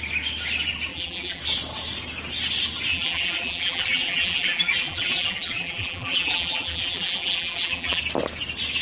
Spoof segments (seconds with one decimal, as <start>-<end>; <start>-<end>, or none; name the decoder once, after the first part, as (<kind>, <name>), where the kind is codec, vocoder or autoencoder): 0.9-1.4 (vocoder, BigVGAN v2); 2.9-8.0

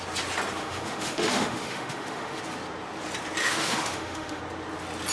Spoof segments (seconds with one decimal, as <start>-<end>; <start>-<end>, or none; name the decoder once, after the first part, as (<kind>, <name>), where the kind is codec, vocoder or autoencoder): 0.6-2.4 (autoencoder, DAC-VAE); 3.4-4.4

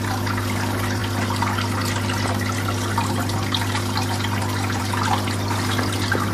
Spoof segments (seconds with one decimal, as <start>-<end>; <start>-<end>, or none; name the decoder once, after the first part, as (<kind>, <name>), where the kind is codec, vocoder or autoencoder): none

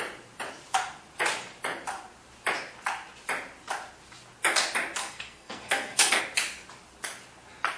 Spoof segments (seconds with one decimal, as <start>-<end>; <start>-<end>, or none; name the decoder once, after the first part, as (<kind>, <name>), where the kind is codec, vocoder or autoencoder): 5.0-6.2 (codec, SNAC)

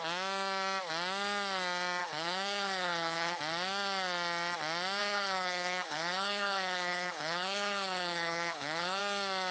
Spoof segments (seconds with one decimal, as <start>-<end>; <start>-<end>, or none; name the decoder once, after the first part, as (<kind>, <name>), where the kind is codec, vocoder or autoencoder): 2.0-3.4 (codec, HILCodec); 5.0-9.0

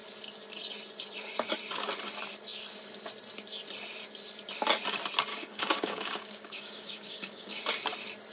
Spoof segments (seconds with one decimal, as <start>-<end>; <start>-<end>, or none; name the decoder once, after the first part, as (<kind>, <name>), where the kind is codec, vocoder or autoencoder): 5.3-7.6 (codec, DAC)

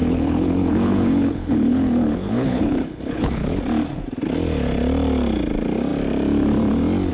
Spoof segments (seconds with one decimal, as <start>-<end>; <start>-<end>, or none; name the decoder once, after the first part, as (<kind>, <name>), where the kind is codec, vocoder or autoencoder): 0.0-3.6 (codec, HILCodec)